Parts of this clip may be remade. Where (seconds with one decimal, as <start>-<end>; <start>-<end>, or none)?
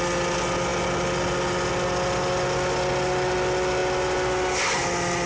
none